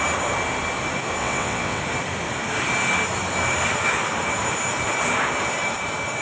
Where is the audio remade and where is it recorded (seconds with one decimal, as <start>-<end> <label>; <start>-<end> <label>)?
0.0-1.2 recorded; 1.2-1.8 remade; 1.8-6.2 recorded

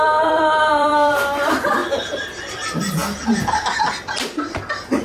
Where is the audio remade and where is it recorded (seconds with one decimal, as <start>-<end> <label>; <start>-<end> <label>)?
0.0-1.8 remade; 1.8-2.5 recorded; 2.5-3.0 remade; 3.0-4.6 recorded; 4.6-5.0 remade

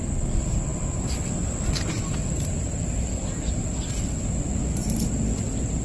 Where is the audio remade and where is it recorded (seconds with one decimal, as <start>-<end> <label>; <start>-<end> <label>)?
0.0-5.8 recorded

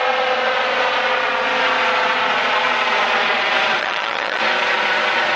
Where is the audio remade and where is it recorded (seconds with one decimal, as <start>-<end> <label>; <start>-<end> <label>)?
0.0-3.8 recorded; 3.8-4.4 remade; 4.4-5.4 recorded

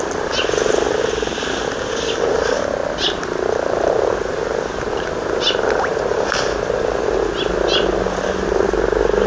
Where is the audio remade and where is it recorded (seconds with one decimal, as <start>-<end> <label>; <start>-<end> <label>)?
0.0-9.3 recorded

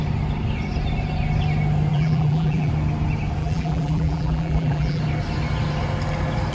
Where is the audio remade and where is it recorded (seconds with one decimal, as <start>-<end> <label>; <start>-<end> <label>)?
0.0-1.9 recorded; 1.9-2.7 remade; 2.7-3.4 recorded; 3.4-5.0 remade; 5.0-6.5 recorded

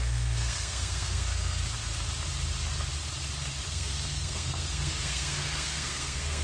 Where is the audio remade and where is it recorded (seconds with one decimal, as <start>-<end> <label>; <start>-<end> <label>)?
0.0-1.6 remade; 1.6-3.7 recorded; 3.7-6.4 remade